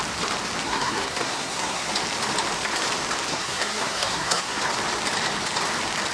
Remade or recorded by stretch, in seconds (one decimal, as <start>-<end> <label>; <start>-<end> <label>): 0.0-0.6 recorded; 0.6-1.9 remade; 1.9-3.3 recorded; 3.3-4.6 remade; 4.6-6.1 recorded